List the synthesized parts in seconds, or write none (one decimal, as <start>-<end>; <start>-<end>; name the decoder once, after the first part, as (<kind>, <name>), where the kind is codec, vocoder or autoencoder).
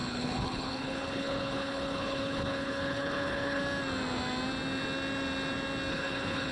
0.0-3.6 (codec, HILCodec); 5.9-6.5